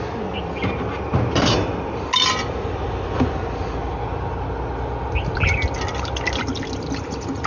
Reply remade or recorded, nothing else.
recorded